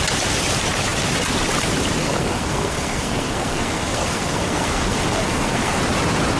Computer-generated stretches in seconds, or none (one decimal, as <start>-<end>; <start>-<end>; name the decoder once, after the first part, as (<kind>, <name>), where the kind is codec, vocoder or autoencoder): 2.0-5.8 (codec, SNAC)